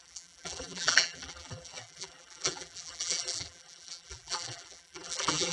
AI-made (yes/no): yes